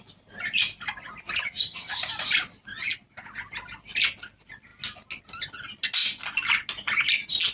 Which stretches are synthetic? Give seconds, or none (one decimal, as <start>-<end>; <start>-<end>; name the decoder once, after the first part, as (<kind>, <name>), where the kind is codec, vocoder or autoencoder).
1.4-2.0 (vocoder, HiFi-GAN)